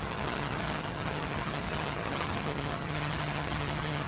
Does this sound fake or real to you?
fake